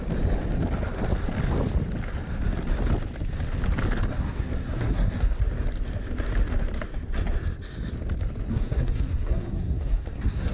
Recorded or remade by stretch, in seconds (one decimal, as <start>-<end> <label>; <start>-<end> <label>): 0.0-4.1 recorded; 4.1-5.4 remade; 5.4-8.5 recorded; 8.5-10.5 remade